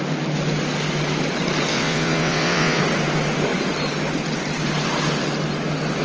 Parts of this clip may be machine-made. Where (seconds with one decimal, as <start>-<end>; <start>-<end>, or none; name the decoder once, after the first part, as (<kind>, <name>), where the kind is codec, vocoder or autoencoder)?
1.7-2.8 (vocoder, WaveNeXt)